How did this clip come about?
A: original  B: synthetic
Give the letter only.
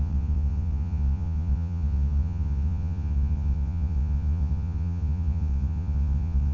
B